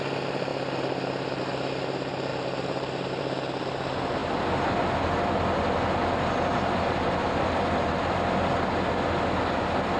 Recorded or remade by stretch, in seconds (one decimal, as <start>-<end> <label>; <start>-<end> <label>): 0.0-2.3 recorded; 2.3-3.2 remade; 3.2-6.5 recorded; 6.5-7.9 remade; 7.9-10.0 recorded